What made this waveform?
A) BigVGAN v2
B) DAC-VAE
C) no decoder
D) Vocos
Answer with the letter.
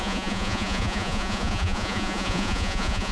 D